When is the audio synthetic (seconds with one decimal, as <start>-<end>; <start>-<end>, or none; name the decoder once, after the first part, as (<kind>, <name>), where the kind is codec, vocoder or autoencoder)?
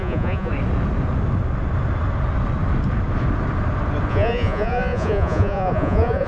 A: 0.0-0.5 (vocoder, Vocos); 4.1-6.3